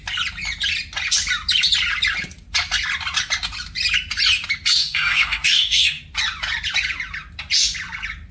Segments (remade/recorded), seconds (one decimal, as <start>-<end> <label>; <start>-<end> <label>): 0.0-4.8 recorded; 4.8-6.0 remade; 6.0-8.3 recorded